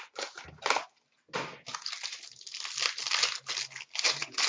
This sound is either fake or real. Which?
real